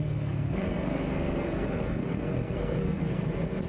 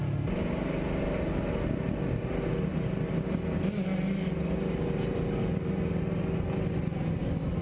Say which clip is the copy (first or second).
first